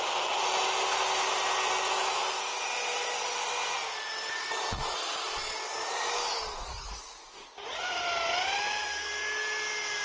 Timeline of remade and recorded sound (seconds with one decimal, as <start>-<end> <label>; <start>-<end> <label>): 0.0-6.7 recorded; 6.7-8.0 remade; 8.0-10.0 recorded